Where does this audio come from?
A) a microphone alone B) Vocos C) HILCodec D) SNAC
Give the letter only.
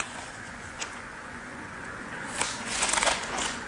B